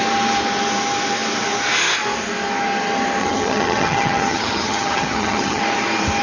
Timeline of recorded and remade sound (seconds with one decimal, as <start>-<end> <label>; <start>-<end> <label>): 0.0-3.2 recorded; 3.2-5.6 remade; 5.6-6.2 recorded